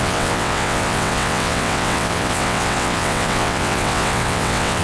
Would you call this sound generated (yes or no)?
yes